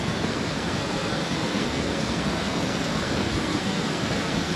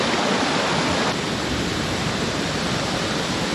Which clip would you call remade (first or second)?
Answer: first